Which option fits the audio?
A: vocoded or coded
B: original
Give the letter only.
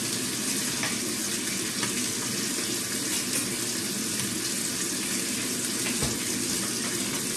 B